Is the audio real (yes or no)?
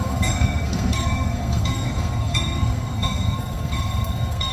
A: no